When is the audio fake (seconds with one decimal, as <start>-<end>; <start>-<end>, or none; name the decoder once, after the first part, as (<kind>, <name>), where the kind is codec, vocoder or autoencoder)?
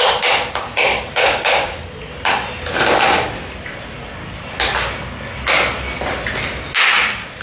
0.9-1.8 (codec, DAC)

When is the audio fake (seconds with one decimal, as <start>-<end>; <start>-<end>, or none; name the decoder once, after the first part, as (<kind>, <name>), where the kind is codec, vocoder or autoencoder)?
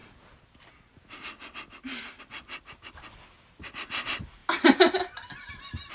none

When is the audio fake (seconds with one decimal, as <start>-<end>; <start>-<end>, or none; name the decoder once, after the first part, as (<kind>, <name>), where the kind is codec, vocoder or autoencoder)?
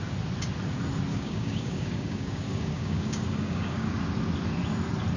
1.1-3.9 (codec, DAC)